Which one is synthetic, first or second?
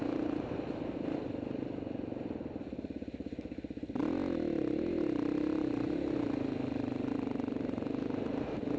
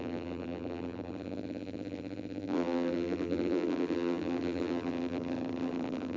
second